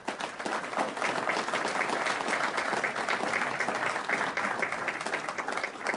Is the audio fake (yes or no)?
no